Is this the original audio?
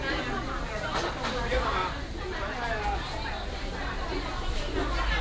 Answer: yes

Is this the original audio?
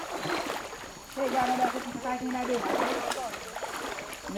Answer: yes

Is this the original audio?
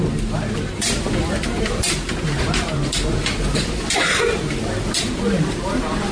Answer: yes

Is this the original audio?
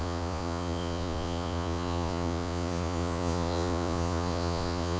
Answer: no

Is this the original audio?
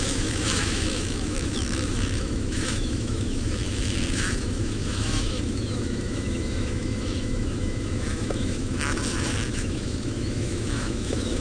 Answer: no